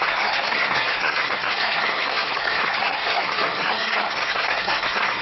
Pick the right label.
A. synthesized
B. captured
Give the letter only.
A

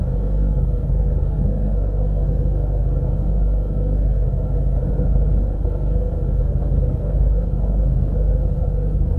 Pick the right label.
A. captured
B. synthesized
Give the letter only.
B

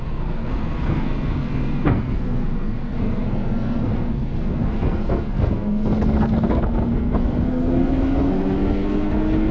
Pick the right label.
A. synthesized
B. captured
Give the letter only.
A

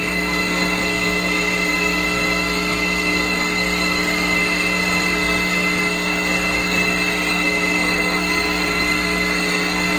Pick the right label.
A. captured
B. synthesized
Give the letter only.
B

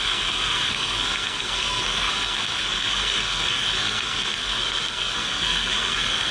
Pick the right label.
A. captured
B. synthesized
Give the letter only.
B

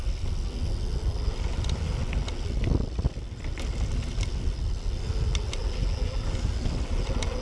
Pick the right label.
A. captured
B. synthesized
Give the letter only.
A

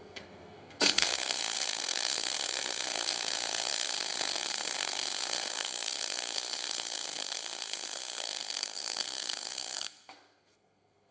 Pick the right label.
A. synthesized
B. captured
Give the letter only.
A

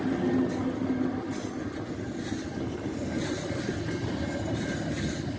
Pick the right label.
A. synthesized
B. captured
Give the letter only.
B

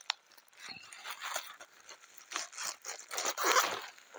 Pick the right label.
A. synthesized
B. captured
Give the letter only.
B